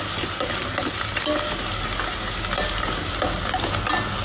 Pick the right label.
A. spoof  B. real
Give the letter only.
B